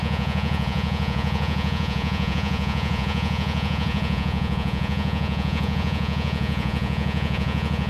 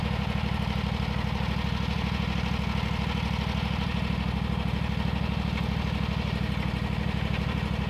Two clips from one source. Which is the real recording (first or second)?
second